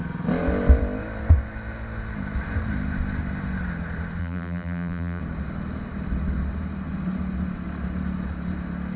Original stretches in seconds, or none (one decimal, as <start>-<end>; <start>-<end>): 0.0-4.2; 5.2-9.0